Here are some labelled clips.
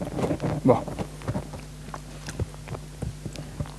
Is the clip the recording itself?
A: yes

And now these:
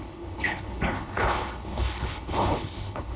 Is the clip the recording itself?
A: no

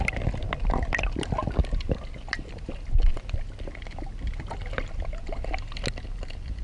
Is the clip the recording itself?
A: yes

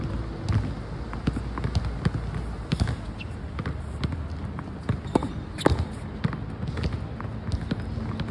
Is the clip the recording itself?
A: yes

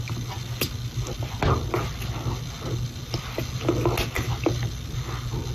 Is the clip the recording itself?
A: yes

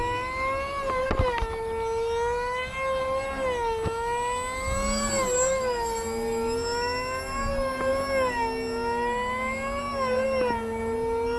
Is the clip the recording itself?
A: yes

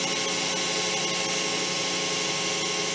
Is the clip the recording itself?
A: yes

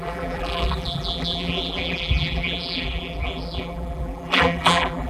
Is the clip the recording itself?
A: no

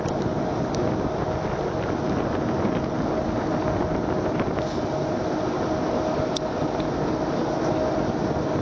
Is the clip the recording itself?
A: yes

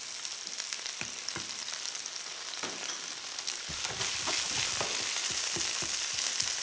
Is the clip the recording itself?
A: yes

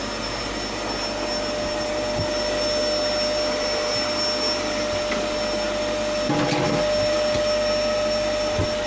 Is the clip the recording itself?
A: yes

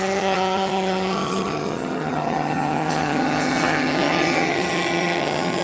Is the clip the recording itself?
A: no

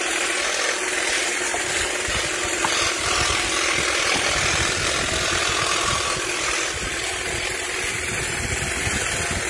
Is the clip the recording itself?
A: yes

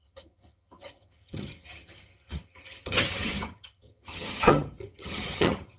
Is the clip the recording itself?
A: no